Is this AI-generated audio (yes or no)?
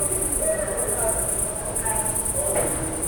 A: no